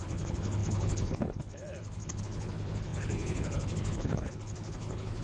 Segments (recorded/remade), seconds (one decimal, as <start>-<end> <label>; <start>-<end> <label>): 0.0-5.2 remade